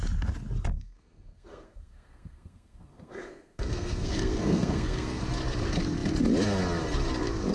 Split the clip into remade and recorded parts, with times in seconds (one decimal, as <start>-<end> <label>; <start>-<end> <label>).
0.0-0.7 recorded; 0.7-5.2 remade; 5.2-7.5 recorded